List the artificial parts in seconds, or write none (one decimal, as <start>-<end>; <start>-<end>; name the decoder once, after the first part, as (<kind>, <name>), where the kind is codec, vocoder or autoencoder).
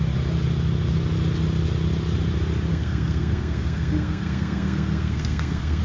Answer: 2.7-5.8 (codec, SNAC)